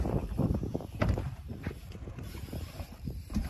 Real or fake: fake